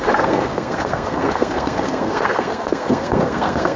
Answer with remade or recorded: remade